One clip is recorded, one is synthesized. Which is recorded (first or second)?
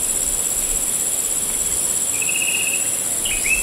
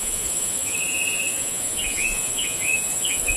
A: first